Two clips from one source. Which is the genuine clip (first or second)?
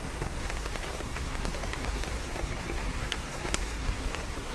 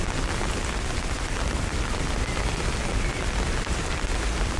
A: second